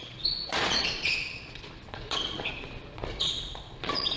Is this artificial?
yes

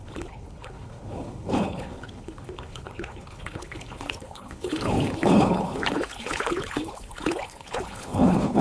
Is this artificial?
yes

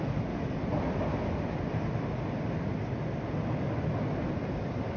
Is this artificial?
no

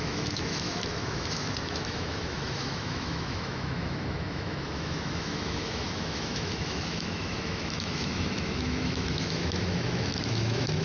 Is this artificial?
yes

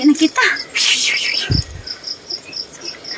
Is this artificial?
no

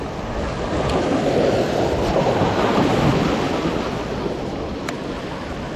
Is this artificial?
no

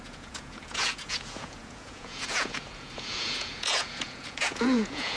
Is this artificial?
yes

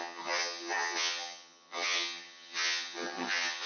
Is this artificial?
yes